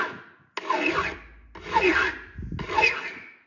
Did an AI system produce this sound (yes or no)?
no